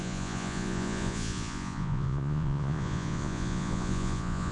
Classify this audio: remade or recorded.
remade